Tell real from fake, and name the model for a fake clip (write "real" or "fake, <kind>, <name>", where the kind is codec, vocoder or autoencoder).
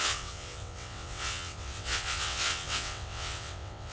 fake, vocoder, WaveNeXt